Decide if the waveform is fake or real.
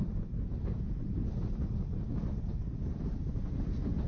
real